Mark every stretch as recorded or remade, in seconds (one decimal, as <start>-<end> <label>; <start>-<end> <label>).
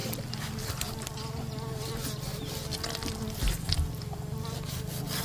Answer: 0.0-5.2 recorded